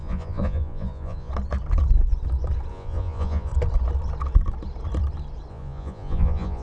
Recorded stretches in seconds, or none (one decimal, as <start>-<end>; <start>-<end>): 1.3-2.7; 3.5-5.5